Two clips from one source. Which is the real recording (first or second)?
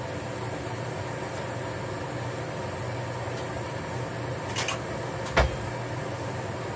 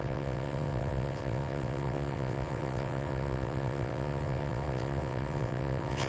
first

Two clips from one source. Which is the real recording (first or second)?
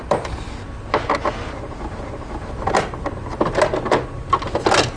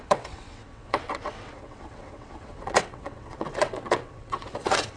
first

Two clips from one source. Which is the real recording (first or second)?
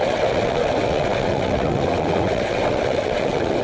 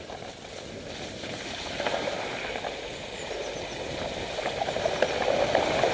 second